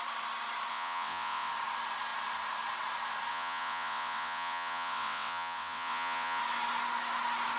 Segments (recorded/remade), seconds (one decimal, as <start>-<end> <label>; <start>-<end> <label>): 0.0-0.7 recorded; 0.7-1.5 remade; 1.5-3.3 recorded; 3.3-6.4 remade; 6.4-7.6 recorded